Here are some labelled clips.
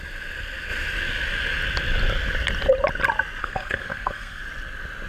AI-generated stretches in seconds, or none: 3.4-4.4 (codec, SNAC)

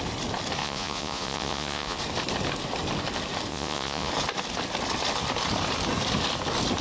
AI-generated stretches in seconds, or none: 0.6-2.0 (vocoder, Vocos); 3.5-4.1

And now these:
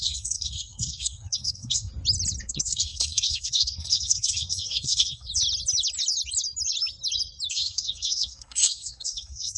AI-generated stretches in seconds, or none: 0.0-1.9 (codec, SNAC); 2.4-5.3; 7.5-9.6

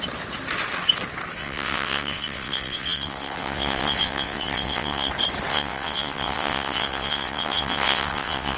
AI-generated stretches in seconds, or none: 1.4-5.1 (vocoder, WaveNeXt); 5.5-8.6

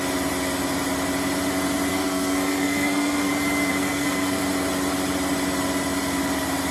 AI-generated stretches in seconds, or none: 1.9-3.3 (codec, SNAC); 3.7-4.4

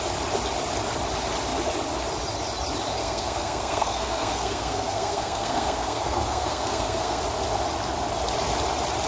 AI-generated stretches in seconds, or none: 3.0-7.2 (codec, SNAC)

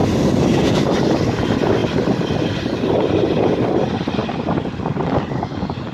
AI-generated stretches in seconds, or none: 0.0-0.9 (vocoder, BigVGAN v2); 1.8-3.3; 4.2-5.0

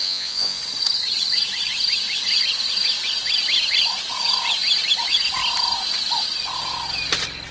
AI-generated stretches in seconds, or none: 0.0-0.6 (vocoder, Vocos)